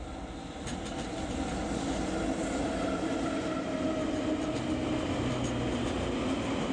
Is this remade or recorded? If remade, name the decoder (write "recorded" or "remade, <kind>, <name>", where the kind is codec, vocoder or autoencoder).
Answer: recorded